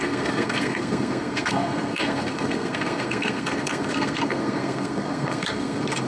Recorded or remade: remade